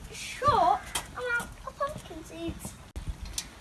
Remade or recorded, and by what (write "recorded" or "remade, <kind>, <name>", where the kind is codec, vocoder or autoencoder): recorded